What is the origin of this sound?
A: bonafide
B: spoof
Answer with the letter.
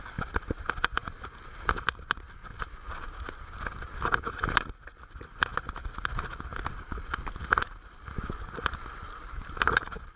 A